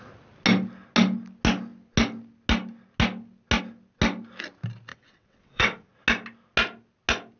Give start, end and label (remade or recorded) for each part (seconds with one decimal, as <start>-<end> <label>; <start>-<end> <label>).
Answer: 0.0-4.9 recorded; 4.9-5.9 remade; 5.9-7.4 recorded